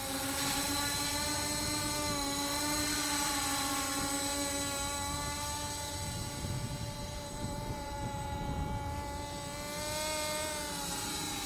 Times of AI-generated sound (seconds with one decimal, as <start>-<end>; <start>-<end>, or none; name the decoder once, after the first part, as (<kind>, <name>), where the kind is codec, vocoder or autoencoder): 7.0-8.4 (vocoder, BigVGAN v2)